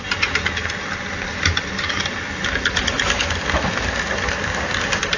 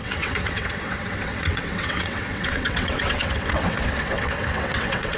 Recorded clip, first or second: first